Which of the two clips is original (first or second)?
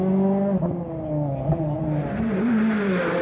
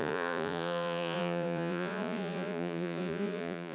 first